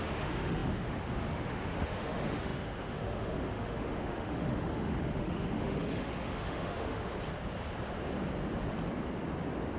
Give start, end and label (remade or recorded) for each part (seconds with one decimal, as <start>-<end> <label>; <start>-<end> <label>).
0.0-7.1 remade; 7.1-9.8 recorded

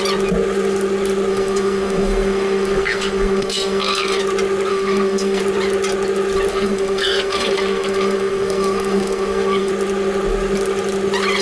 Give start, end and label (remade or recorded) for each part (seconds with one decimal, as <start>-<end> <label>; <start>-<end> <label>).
0.0-1.3 recorded; 1.3-4.2 remade; 4.2-4.7 recorded; 4.7-5.4 remade; 5.4-6.5 recorded; 6.5-9.7 remade; 9.7-11.4 recorded

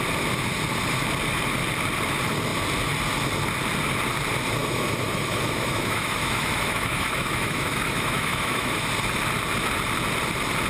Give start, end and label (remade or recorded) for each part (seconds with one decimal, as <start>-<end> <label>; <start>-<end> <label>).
0.0-4.6 recorded; 4.6-8.8 remade; 8.8-10.7 recorded

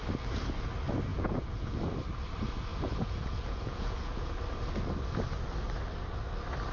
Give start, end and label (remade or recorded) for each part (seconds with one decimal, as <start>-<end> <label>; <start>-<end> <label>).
0.0-1.1 recorded; 1.1-1.8 remade; 1.8-2.7 recorded; 2.7-4.3 remade; 4.3-6.7 recorded